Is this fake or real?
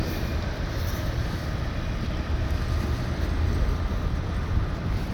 real